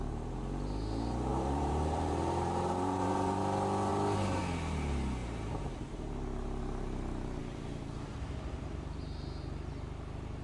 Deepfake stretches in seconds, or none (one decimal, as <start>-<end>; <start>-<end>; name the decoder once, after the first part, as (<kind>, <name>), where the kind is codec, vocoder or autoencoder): 1.3-3.4 (vocoder, BigVGAN v2); 5.2-6.0; 7.4-9.7